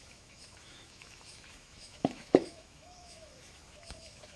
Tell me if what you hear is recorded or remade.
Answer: remade